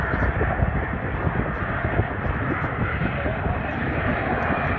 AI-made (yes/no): no